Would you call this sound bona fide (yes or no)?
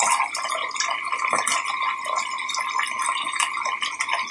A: yes